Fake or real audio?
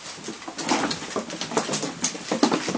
real